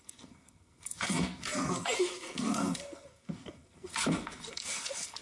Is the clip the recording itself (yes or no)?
no